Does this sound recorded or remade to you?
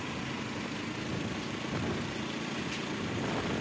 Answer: recorded